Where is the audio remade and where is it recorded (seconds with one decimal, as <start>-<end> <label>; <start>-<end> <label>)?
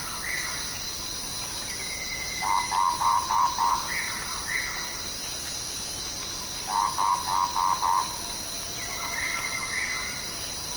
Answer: 0.0-1.3 recorded; 1.3-2.4 remade; 2.4-3.0 recorded; 3.0-4.1 remade; 4.1-10.8 recorded